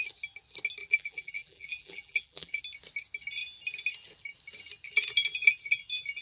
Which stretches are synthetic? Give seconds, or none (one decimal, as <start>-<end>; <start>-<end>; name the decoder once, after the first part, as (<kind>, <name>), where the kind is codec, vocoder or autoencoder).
0.8-2.6 (vocoder, BigVGAN v2)